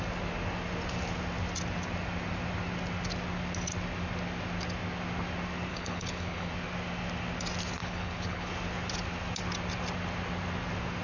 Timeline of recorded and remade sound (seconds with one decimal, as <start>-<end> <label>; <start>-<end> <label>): 0.0-5.7 recorded; 5.7-6.5 remade; 6.5-7.8 recorded; 7.8-8.5 remade; 8.5-11.0 recorded